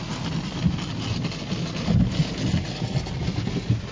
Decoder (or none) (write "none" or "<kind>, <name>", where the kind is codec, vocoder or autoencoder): none